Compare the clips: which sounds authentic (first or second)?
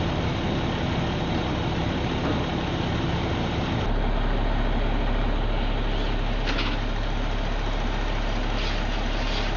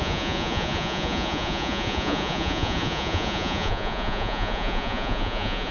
first